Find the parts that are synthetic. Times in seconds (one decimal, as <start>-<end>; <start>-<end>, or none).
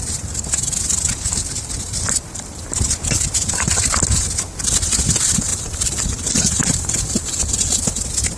5.5-7.8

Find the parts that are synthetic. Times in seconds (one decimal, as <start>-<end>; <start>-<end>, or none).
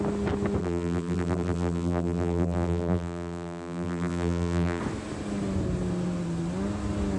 0.6-4.8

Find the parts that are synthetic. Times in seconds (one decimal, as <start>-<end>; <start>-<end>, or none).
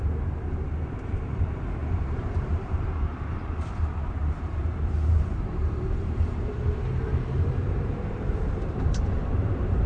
0.0-9.9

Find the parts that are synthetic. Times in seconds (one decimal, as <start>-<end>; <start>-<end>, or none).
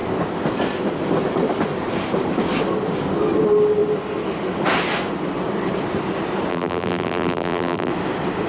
6.5-7.9